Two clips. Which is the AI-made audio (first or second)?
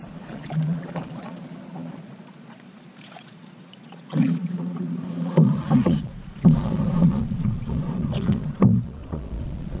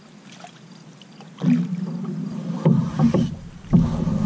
first